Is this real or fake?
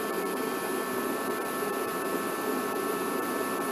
fake